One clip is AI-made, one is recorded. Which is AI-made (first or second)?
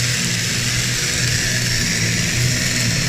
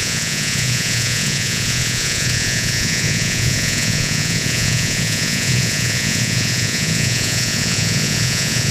second